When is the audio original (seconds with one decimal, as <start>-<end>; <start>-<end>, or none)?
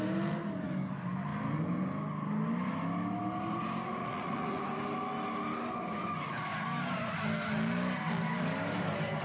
0.0-4.0; 4.6-9.2